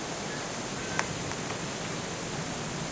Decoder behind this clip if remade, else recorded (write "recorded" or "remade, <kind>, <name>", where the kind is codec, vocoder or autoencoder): recorded